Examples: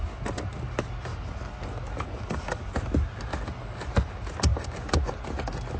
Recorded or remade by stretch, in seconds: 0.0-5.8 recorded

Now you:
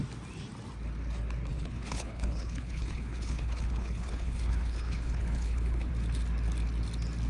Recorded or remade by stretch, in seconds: 0.0-1.5 recorded; 1.5-5.9 remade; 5.9-7.3 recorded

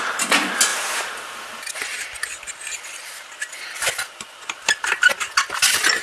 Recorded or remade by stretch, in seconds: 0.0-0.7 recorded; 0.7-3.1 remade; 3.1-6.0 recorded

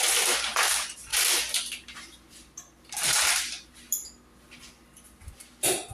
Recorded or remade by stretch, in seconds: 0.0-5.9 recorded

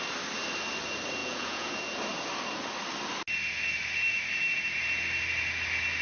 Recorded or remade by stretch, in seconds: 0.0-1.2 recorded; 1.2-1.7 remade; 1.7-6.0 recorded